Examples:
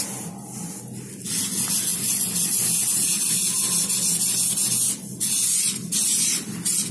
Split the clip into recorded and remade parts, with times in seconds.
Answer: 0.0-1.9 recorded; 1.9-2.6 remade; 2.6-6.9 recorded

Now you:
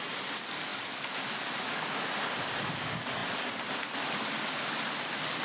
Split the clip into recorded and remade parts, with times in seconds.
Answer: 0.0-5.4 recorded

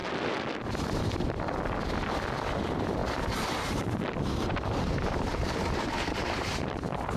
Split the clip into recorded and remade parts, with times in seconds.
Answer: 0.0-3.0 recorded; 3.0-7.2 remade

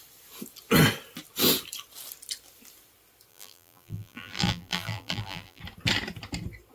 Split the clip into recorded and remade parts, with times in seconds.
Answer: 0.0-3.3 recorded; 3.3-5.6 remade; 5.6-6.7 recorded

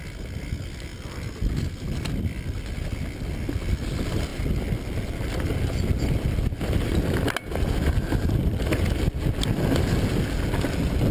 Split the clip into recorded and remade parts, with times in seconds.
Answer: 0.0-4.3 recorded; 4.3-9.2 remade; 9.2-11.1 recorded

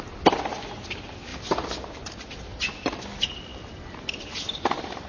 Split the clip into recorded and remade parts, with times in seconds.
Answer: 0.0-1.3 recorded; 1.3-2.1 remade; 2.1-5.1 recorded

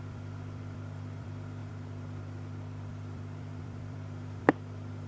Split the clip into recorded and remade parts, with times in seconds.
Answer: 0.0-5.1 remade